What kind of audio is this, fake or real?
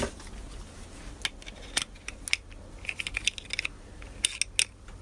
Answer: real